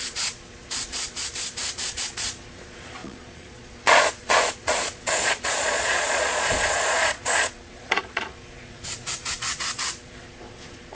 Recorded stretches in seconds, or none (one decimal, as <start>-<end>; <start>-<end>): none